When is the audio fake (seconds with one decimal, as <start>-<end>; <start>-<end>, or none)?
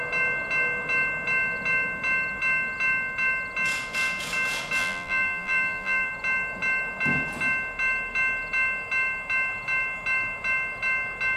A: 4.8-6.1